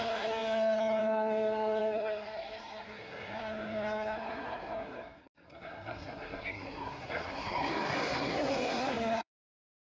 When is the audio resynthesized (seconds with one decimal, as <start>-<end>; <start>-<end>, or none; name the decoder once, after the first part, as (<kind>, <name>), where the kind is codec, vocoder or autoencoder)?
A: 0.0-9.9 (codec, SNAC)